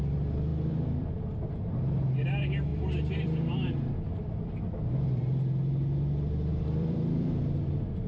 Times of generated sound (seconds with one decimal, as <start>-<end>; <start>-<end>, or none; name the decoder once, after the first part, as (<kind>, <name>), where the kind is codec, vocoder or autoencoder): 0.5-1.5 (vocoder, BigVGAN v2); 2.7-4.5; 6.5-8.1